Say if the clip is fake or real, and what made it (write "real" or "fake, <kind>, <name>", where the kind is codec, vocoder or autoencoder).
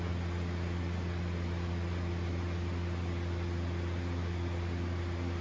real